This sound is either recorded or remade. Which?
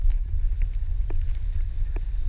recorded